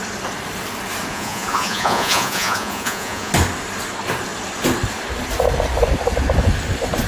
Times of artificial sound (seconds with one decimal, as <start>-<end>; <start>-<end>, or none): 1.1-3.3